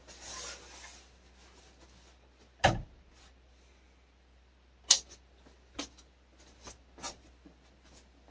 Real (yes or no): yes